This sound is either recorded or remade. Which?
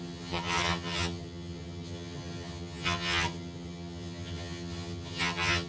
remade